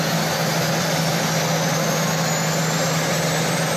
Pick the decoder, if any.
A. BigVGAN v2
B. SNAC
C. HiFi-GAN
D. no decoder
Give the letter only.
D